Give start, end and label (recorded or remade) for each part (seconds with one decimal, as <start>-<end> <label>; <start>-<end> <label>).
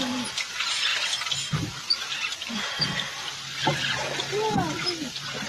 0.0-5.5 recorded